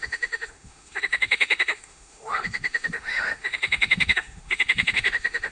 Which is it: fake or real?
fake